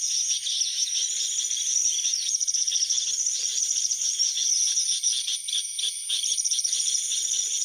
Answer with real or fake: real